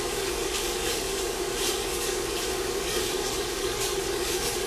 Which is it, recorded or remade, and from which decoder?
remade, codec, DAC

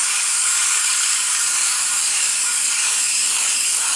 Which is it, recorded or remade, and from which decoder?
remade, codec, DAC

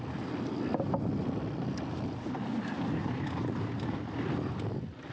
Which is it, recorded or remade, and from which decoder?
recorded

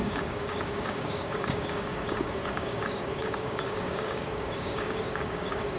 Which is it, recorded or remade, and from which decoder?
remade, codec, DAC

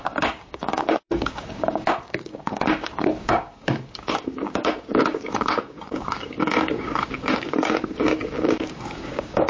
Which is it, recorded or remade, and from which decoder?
remade, codec, DAC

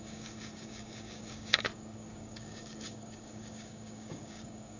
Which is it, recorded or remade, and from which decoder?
remade, codec, DAC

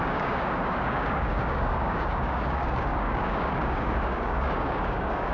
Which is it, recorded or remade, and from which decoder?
remade, codec, DAC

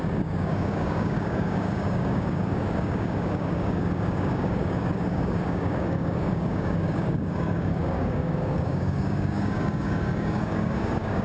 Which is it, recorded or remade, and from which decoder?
remade, codec, DAC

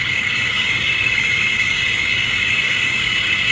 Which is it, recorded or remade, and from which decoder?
remade, codec, DAC